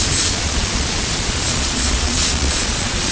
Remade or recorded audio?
remade